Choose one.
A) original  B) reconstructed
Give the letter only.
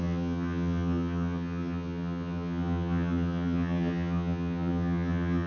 B